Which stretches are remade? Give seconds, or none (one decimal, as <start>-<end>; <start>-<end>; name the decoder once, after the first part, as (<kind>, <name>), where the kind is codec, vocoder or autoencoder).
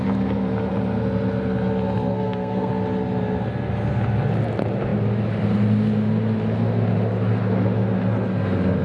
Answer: 2.1-2.7 (codec, SNAC)